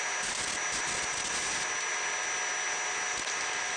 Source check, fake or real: real